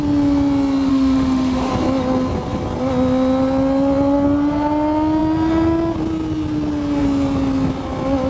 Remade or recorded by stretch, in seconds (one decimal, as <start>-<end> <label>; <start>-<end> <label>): 0.0-0.9 recorded; 0.9-1.7 remade; 1.7-8.3 recorded